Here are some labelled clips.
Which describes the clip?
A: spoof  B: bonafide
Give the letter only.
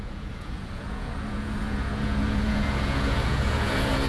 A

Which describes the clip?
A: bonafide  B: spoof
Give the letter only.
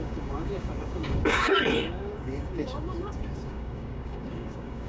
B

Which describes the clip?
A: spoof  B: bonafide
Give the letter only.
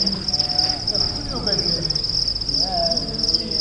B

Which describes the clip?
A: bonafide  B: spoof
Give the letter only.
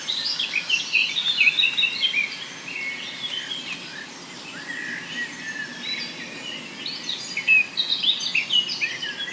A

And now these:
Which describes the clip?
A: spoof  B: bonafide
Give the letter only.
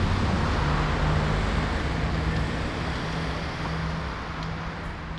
B